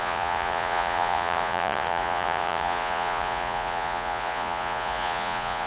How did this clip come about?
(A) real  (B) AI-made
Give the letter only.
B